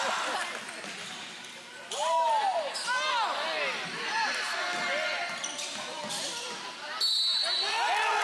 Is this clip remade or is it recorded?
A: recorded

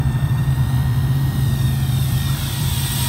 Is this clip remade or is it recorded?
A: remade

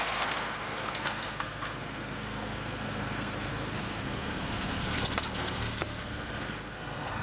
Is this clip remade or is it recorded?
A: remade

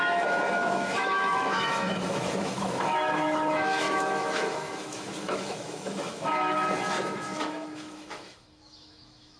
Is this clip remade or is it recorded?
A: remade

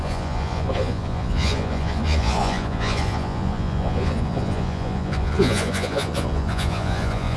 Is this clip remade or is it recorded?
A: remade